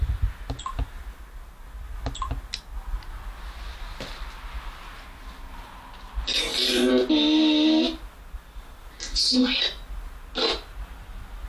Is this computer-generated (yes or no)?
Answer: no